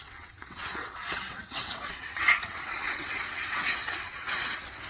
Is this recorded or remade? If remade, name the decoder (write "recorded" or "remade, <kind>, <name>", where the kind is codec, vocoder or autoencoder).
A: remade, vocoder, WaveNeXt